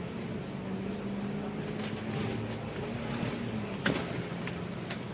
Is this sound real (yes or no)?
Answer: yes